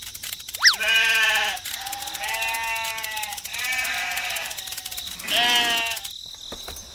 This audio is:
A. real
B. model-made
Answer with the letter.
A